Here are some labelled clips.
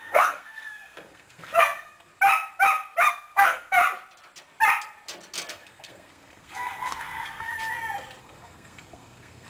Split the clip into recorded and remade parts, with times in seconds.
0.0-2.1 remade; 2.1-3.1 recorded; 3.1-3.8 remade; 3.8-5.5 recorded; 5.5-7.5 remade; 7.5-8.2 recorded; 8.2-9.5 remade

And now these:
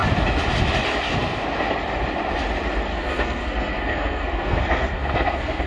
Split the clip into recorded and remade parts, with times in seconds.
0.0-2.9 recorded; 2.9-5.7 remade

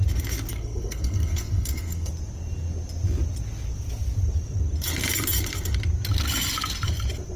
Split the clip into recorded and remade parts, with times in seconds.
0.0-0.5 recorded; 0.5-2.1 remade; 2.1-7.4 recorded

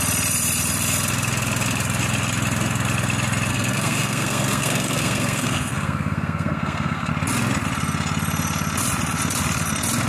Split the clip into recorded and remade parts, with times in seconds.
0.0-3.5 recorded; 3.5-7.1 remade; 7.1-10.1 recorded